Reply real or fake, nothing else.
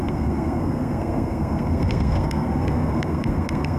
fake